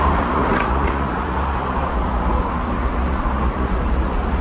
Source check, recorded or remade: remade